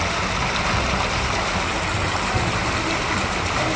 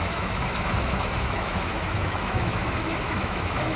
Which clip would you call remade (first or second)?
second